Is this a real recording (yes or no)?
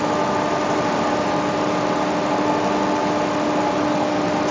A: yes